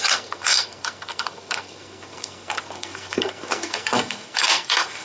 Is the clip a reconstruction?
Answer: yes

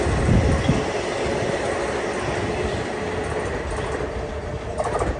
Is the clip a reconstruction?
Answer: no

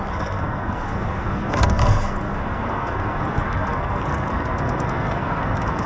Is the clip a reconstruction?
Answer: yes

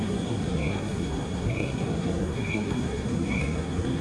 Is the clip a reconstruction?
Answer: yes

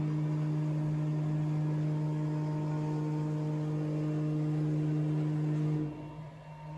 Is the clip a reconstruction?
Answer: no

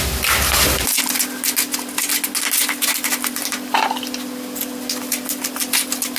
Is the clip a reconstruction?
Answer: no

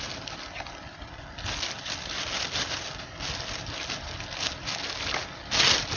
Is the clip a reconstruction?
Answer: no